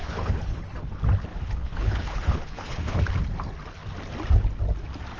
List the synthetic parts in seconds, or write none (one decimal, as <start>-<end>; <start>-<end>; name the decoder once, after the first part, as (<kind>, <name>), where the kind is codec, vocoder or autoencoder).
0.0-0.6 (codec, HILCodec); 1.3-3.0